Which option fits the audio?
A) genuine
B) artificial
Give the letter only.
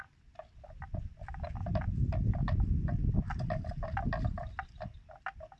A